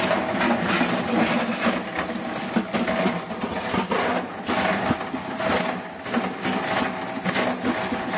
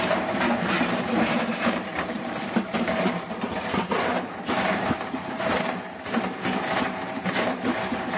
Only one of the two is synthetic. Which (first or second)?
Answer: second